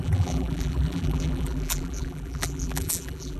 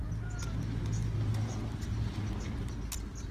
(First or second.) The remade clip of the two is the first